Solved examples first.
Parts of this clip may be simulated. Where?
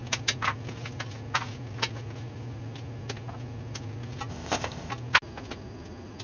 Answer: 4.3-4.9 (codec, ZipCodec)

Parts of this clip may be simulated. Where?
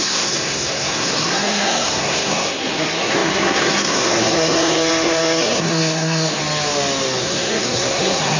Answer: 0.0-6.4 (codec, SNAC); 7.2-8.4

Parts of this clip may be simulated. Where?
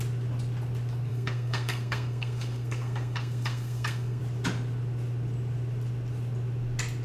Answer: 1.1-4.2 (codec, SNAC)